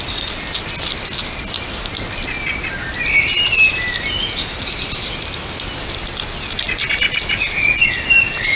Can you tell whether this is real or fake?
real